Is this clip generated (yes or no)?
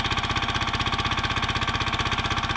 no